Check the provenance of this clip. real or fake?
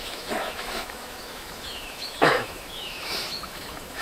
fake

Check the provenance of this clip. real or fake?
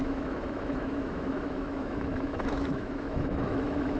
fake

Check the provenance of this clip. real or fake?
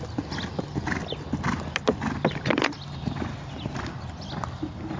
real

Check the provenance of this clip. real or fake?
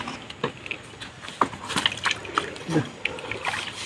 real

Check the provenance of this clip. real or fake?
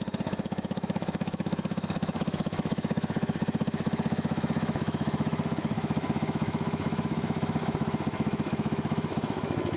fake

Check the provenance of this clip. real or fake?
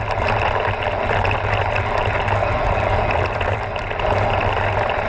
real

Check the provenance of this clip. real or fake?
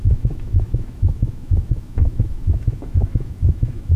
fake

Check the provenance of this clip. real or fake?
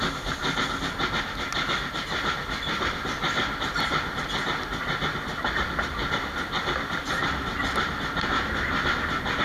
real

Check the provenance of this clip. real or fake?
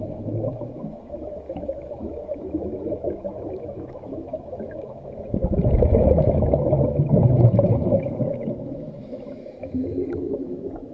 fake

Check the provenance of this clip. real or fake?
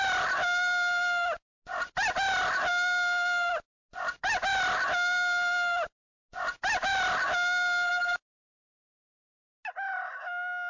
real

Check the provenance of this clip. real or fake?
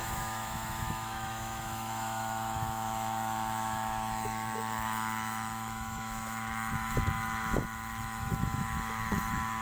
fake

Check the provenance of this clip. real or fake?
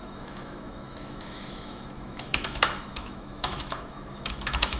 fake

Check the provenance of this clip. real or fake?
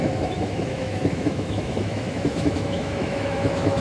fake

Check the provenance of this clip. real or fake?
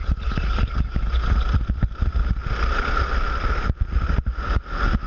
real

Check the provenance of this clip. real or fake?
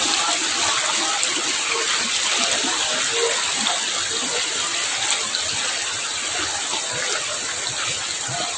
real